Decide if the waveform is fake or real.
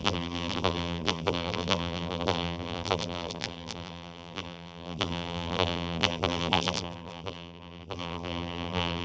fake